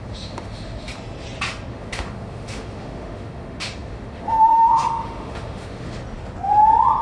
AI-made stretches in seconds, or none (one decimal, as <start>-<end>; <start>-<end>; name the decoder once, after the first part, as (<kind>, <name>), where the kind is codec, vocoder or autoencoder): 0.0-0.9 (autoencoder, DAC-VAE); 1.7-6.0